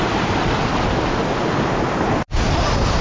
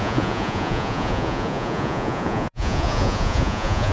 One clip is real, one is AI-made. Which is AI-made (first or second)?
second